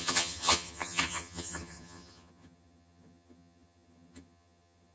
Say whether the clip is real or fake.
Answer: fake